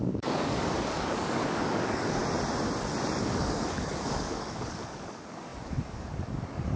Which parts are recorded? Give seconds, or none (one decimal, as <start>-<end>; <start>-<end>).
2.2-3.2